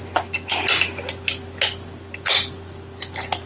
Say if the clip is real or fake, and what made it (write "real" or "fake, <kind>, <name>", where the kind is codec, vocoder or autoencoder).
real